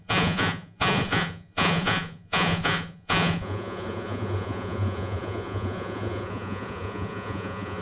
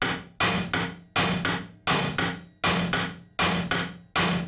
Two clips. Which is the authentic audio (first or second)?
second